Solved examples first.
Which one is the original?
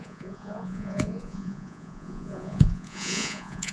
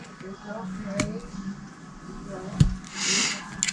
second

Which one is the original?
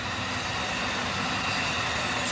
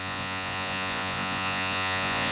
first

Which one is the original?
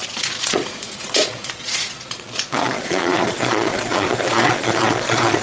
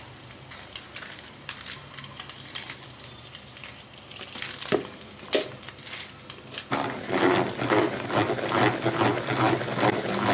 second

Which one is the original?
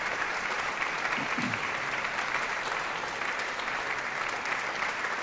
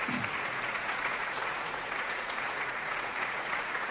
first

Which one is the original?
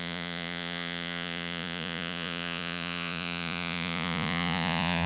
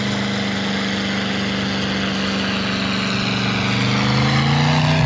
second